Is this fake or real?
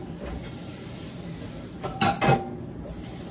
real